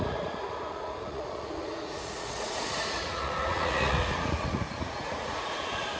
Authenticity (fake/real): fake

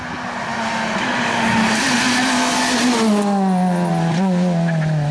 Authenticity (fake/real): real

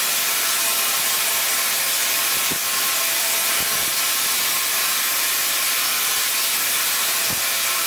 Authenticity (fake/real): real